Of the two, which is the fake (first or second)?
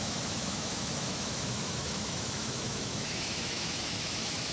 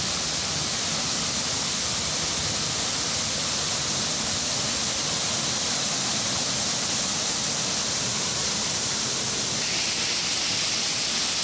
first